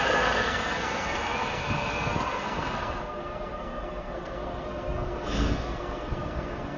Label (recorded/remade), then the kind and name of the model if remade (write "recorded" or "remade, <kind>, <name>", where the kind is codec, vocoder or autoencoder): remade, codec, SNAC